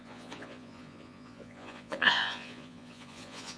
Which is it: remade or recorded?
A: remade